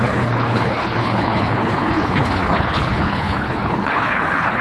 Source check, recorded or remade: remade